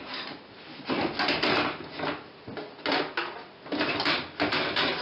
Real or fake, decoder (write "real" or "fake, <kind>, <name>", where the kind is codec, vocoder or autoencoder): real